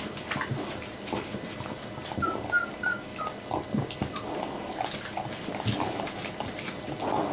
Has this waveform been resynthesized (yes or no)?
no